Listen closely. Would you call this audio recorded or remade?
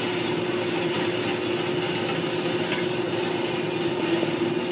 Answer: recorded